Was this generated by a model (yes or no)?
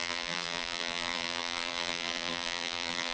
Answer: yes